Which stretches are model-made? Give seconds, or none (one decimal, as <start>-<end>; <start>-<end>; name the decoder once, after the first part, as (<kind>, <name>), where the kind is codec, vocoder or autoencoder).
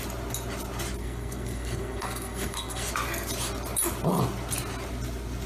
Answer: 1.0-2.9 (codec, SNAC)